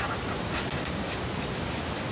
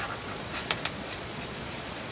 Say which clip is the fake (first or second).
second